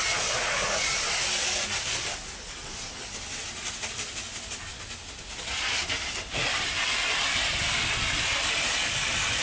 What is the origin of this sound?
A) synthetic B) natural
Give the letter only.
B